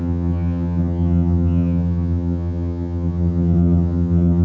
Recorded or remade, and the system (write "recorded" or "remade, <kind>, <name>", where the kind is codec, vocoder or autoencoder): remade, vocoder, HiFi-GAN